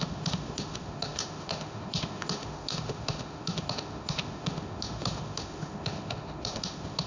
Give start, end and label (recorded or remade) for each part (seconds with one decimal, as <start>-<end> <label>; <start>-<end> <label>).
0.0-7.1 remade

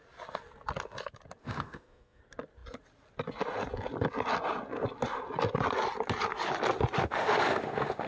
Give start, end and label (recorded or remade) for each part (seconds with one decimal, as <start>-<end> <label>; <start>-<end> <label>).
0.0-1.4 recorded; 1.4-2.2 remade; 2.2-7.0 recorded; 7.0-8.1 remade

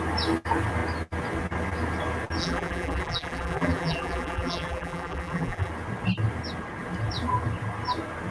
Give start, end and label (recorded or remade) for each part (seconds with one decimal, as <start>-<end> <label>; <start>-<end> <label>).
0.0-2.4 recorded; 2.4-5.7 remade; 5.7-8.3 recorded

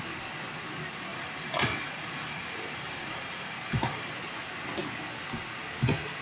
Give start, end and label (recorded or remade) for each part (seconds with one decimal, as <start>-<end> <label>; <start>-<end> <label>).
0.0-1.1 recorded; 1.1-4.2 remade; 4.2-6.2 recorded